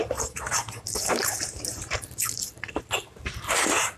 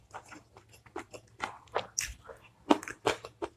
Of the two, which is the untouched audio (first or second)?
second